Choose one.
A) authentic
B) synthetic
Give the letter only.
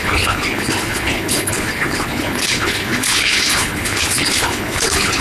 B